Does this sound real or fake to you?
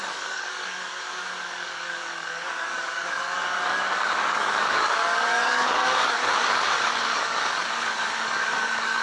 fake